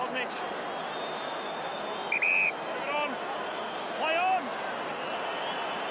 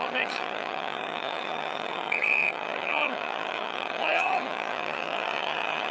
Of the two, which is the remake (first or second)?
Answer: second